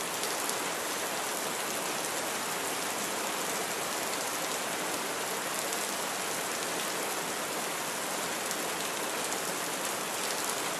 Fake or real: real